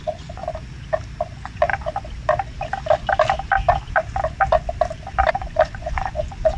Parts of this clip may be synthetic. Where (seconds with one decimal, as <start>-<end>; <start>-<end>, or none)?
0.0-0.4; 1.2-1.7; 5.3-6.6